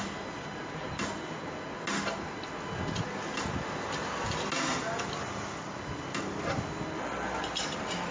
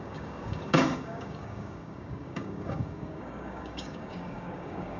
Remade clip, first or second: second